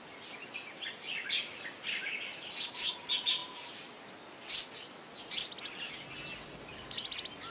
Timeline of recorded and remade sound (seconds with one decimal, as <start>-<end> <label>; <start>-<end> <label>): 0.0-7.5 recorded